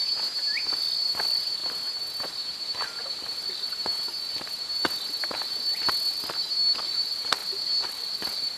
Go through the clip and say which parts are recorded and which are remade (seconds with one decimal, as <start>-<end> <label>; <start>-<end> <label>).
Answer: 0.0-8.6 recorded